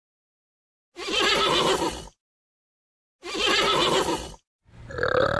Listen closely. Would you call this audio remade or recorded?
recorded